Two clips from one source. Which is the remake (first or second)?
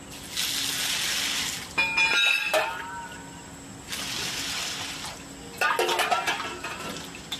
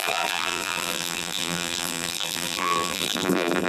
second